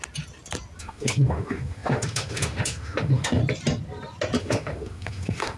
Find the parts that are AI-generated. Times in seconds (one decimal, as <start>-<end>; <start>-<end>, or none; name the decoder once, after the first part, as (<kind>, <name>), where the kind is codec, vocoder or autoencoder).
0.8-3.4 (autoencoder, DAC-VAE); 4.4-5.6